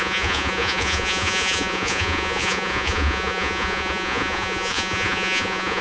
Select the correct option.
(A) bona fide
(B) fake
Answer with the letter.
B